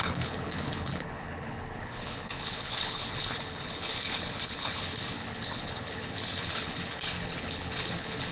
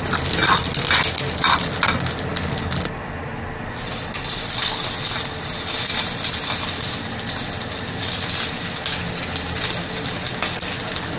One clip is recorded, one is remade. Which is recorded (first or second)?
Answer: second